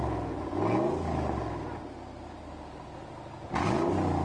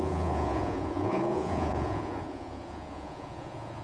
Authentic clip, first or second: first